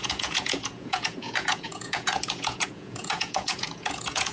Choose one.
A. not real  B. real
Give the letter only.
A